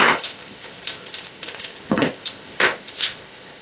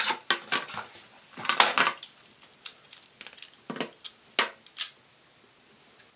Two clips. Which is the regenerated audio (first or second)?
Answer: first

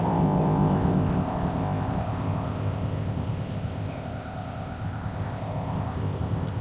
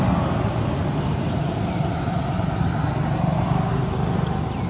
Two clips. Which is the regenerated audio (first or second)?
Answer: first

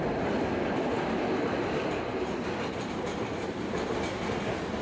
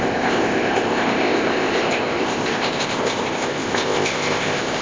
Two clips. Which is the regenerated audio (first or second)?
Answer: second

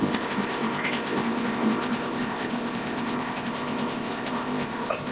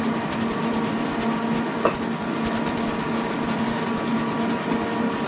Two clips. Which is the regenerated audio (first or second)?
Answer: first